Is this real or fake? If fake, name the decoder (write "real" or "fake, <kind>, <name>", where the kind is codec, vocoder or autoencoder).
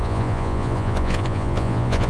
fake, vocoder, Vocos